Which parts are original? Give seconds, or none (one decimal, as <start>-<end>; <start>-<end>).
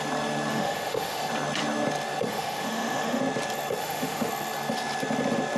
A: 0.0-0.5; 1.2-2.3; 3.2-3.8; 4.3-5.6